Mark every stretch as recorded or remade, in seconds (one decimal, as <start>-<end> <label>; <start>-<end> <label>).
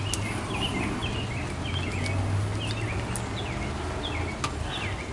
0.0-5.1 recorded